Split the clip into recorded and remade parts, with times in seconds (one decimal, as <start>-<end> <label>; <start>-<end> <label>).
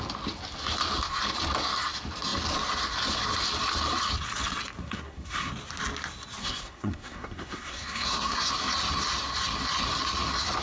0.0-4.8 recorded; 4.8-5.5 remade; 5.5-6.4 recorded; 6.4-8.5 remade; 8.5-10.6 recorded